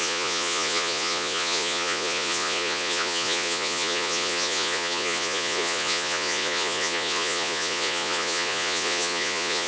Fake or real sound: fake